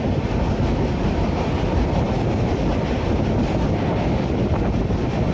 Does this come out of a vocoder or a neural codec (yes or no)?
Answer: no